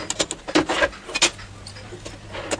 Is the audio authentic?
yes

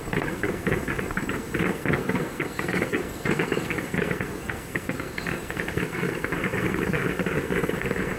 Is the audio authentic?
no